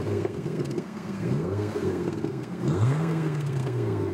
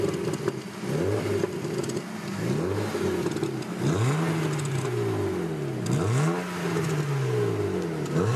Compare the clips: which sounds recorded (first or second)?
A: second